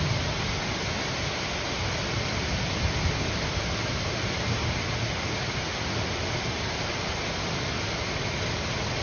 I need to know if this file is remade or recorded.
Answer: recorded